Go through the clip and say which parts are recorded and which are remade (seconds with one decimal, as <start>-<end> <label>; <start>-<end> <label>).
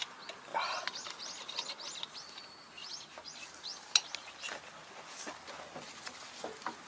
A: 0.0-6.9 recorded